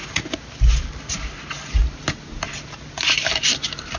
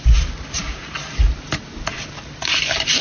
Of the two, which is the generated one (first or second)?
second